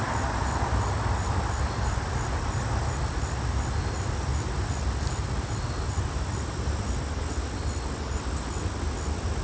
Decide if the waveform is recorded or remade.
recorded